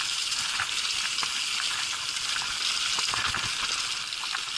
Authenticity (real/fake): real